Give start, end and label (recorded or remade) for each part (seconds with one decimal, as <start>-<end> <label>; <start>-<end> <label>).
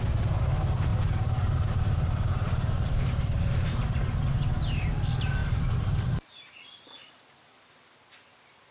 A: 0.0-0.9 recorded; 0.9-4.0 remade; 4.0-5.4 recorded; 5.4-6.9 remade; 6.9-8.7 recorded